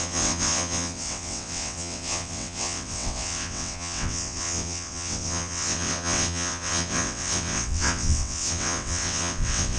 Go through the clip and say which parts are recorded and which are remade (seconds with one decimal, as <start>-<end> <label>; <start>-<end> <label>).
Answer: 0.0-9.8 remade